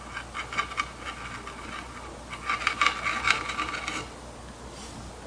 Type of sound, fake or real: real